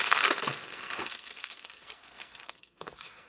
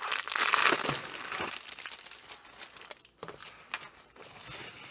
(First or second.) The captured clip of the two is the second